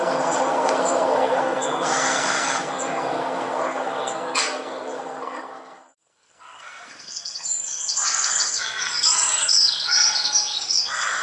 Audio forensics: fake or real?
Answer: fake